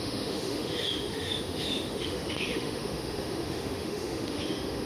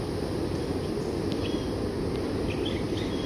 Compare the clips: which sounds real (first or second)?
second